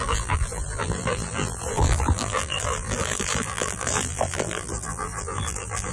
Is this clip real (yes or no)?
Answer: no